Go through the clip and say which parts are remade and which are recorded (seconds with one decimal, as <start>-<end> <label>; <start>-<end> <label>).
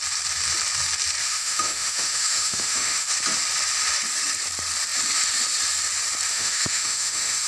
0.0-1.2 recorded; 1.2-3.1 remade; 3.1-6.3 recorded; 6.3-7.5 remade